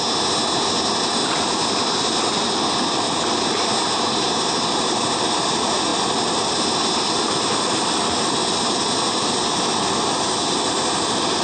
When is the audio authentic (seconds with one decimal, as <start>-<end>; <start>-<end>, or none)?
0.0-11.4